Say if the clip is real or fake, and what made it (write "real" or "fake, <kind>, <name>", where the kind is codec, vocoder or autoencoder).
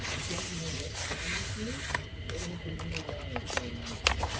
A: real